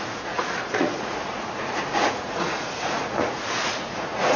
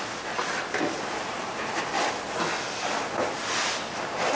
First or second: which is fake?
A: first